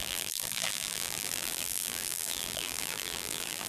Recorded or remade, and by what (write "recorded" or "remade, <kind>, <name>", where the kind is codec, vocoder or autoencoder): remade, vocoder, BigVGAN v2